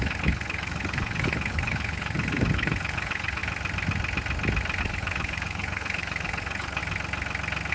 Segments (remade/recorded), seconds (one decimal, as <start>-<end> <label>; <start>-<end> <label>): 0.0-3.4 remade; 3.4-4.8 recorded; 4.8-6.8 remade; 6.8-7.7 recorded